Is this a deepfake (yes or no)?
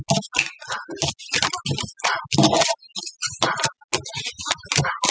no